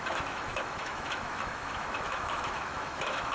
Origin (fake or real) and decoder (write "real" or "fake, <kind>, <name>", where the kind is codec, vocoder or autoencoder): fake, autoencoder, DAC-VAE